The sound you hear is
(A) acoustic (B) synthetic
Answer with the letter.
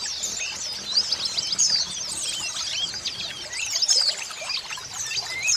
A